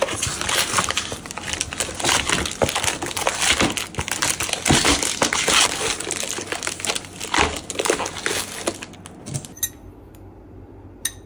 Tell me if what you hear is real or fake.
real